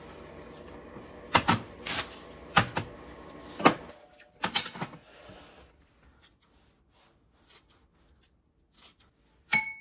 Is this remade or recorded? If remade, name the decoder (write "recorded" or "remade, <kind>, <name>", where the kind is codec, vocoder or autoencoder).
recorded